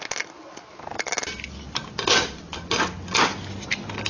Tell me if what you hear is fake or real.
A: real